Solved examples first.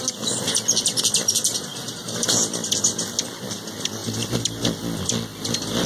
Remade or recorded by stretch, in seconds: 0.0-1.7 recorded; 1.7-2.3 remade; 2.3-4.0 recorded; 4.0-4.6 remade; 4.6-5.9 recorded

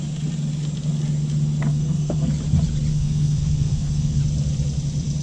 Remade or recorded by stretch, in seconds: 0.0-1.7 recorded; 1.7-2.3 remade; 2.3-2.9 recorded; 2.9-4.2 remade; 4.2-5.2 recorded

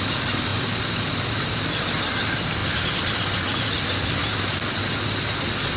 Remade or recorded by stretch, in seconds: 0.0-5.8 recorded

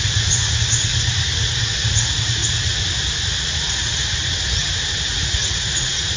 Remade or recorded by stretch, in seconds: 0.0-0.9 remade; 0.9-1.6 recorded; 1.6-2.4 remade; 2.4-3.4 recorded; 3.4-4.0 remade; 4.0-5.1 recorded; 5.1-6.2 remade

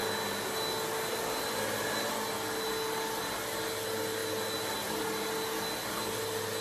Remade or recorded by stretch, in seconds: 0.0-6.6 recorded

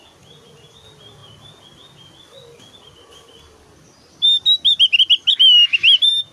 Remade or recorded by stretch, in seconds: 0.0-6.3 recorded

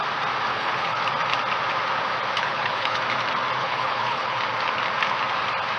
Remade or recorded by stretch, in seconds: 0.0-0.5 recorded; 0.5-1.0 remade; 1.0-2.4 recorded; 2.4-3.0 remade; 3.0-3.6 recorded; 3.6-4.4 remade; 4.4-5.8 recorded